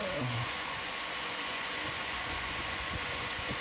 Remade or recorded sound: remade